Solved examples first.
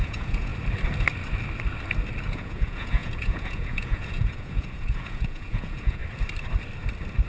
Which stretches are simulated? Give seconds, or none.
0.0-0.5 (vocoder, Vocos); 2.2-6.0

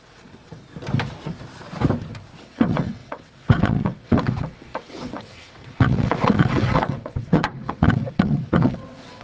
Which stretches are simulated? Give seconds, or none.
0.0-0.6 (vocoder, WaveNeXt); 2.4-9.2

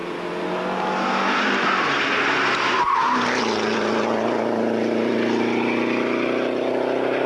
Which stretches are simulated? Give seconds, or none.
none

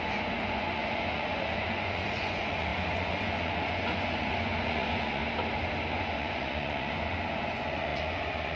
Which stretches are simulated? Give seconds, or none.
0.0-5.2 (vocoder, Vocos); 5.9-8.6